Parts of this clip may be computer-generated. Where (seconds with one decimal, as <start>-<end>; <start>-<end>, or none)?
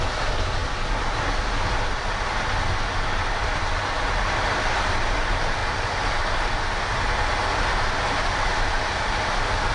none